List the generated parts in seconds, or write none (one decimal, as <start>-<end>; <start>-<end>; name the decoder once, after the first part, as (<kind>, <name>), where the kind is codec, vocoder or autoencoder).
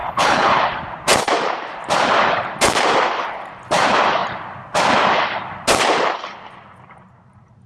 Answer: 0.0-0.6 (codec, HILCodec)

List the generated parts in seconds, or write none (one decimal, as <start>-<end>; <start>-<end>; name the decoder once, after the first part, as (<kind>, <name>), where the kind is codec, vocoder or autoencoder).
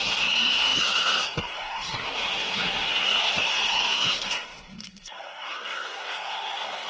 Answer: 0.0-6.9 (codec, SNAC)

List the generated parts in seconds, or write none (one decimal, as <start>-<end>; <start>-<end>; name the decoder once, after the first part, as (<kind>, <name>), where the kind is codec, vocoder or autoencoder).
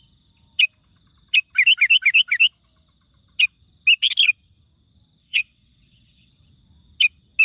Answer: 5.2-6.3 (vocoder, WaveNeXt)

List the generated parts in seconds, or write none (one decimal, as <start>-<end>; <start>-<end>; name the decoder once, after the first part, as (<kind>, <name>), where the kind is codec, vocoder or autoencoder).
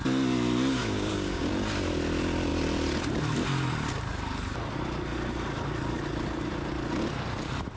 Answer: 0.8-1.5 (codec, DAC)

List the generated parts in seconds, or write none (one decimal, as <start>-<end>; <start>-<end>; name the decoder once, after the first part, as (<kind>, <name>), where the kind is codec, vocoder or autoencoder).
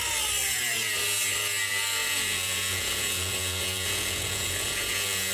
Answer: 2.0-5.3 (vocoder, Vocos)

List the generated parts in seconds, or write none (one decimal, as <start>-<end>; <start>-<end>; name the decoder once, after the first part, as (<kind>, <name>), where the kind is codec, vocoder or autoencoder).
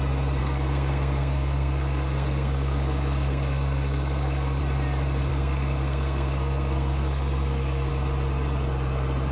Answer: 0.4-4.6 (codec, SNAC); 5.3-7.9